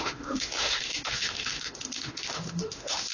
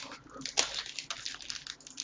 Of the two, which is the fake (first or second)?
first